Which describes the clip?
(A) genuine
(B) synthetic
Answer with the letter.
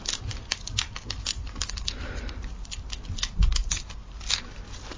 A